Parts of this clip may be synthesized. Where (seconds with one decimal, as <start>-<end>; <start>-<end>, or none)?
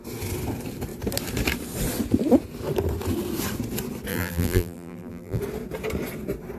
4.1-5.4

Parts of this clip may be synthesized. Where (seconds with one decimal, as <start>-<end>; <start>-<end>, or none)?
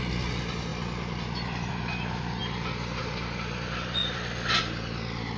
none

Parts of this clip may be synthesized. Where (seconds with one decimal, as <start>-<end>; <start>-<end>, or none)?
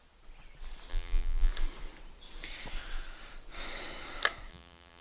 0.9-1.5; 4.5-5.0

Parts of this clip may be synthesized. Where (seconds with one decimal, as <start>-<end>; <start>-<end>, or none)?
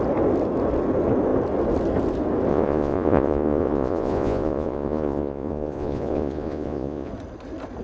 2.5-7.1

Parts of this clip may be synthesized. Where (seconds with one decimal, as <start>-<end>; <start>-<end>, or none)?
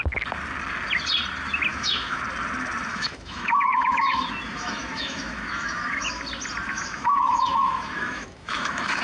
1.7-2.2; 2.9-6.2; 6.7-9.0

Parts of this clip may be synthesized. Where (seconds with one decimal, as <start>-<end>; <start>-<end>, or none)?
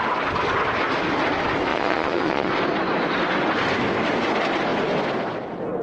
1.7-2.5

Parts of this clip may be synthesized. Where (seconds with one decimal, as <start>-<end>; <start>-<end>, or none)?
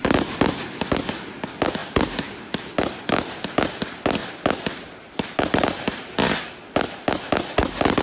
none